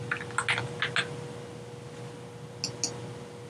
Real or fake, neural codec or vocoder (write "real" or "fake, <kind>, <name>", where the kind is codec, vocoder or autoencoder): real